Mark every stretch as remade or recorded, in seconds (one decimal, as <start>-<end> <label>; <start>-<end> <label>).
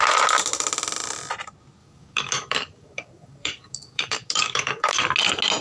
0.0-1.8 recorded; 1.8-5.0 remade; 5.0-5.6 recorded